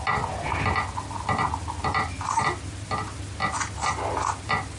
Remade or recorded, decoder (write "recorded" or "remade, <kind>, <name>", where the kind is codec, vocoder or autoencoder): recorded